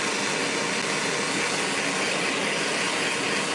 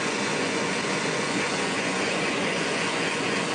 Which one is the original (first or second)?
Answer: first